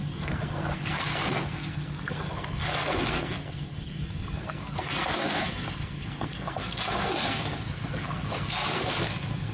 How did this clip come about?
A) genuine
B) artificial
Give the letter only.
B